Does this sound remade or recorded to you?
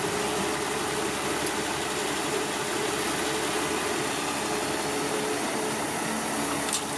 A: recorded